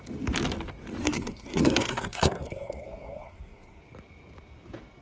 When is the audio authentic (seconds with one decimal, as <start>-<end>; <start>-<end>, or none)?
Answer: 0.0-1.0; 3.8-5.0